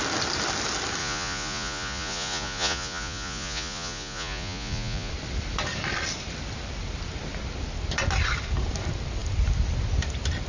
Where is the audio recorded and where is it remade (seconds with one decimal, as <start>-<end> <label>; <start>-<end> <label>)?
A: 0.0-1.0 recorded; 1.0-5.1 remade; 5.1-10.5 recorded